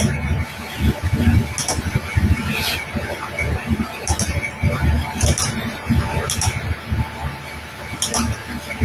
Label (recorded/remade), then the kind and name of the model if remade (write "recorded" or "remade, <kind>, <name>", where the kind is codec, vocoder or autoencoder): recorded